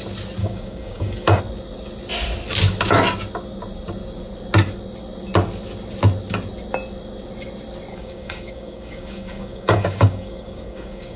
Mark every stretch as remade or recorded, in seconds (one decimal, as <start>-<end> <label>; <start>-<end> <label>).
0.0-0.4 recorded; 0.4-1.4 remade; 1.4-7.9 recorded; 7.9-11.2 remade

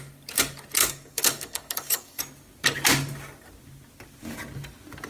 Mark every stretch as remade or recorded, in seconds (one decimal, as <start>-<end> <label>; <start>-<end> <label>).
0.0-0.8 recorded; 0.8-2.2 remade; 2.2-5.1 recorded

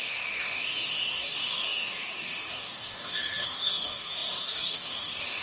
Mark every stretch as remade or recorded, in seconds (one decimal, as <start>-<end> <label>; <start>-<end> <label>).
0.0-5.4 remade

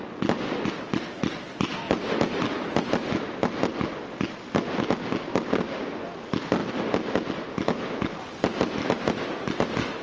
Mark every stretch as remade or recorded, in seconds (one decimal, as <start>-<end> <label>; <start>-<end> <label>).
0.0-5.3 recorded; 5.3-6.0 remade; 6.0-10.0 recorded

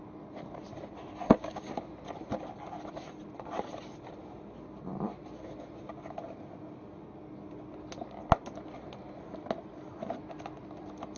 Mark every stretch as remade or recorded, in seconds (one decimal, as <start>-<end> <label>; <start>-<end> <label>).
0.0-1.2 recorded; 1.2-1.7 remade; 1.7-11.2 recorded

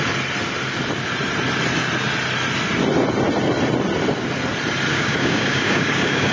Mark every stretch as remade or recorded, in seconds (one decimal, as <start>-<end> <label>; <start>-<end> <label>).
0.0-4.9 recorded; 4.9-6.3 remade

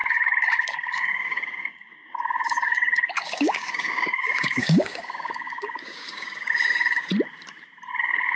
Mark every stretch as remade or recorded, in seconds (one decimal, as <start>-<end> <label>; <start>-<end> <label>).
0.0-7.1 remade; 7.1-8.0 recorded; 8.0-8.4 remade

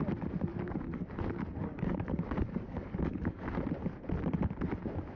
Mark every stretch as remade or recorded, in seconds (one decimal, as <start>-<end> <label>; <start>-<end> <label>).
0.0-0.5 recorded; 0.5-3.6 remade; 3.6-5.2 recorded